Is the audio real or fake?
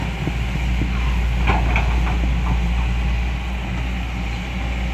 real